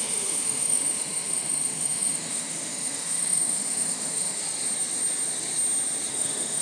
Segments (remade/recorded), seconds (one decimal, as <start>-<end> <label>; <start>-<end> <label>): 0.0-4.4 remade; 4.4-6.1 recorded; 6.1-6.6 remade